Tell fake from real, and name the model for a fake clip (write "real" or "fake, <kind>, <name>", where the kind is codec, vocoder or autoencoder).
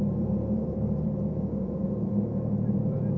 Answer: fake, vocoder, Vocos